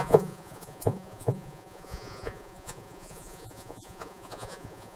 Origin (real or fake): fake